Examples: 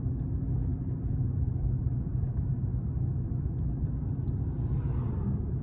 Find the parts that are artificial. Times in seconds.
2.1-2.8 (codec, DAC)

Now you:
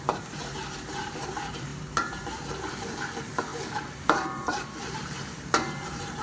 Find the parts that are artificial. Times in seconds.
0.0-6.2 (vocoder, BigVGAN v2)

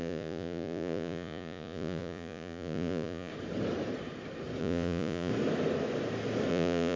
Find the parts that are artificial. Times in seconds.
0.0-3.3 (vocoder, Vocos); 4.6-5.3; 6.5-7.0